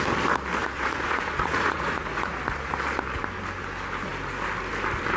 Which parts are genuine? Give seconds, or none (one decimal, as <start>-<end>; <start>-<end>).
0.0-0.6; 2.4-5.2